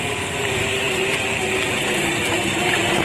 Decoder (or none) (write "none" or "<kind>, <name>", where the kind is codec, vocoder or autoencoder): none